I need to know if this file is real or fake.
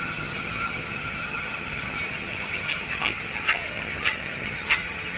fake